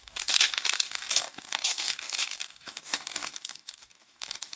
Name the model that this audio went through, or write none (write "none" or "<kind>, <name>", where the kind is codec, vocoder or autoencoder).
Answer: codec, DAC